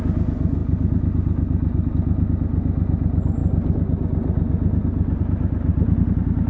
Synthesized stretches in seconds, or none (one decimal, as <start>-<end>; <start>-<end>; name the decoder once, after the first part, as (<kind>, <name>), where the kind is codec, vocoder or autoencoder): none